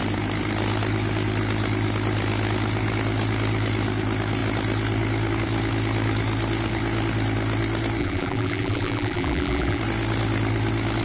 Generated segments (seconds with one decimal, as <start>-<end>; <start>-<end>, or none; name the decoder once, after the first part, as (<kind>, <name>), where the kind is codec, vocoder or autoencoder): 8.0-9.8 (vocoder, BigVGAN v2)